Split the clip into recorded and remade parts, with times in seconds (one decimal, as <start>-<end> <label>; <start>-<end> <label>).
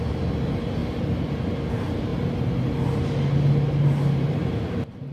0.0-0.8 remade; 0.8-1.7 recorded; 1.7-2.1 remade; 2.1-3.8 recorded; 3.8-5.1 remade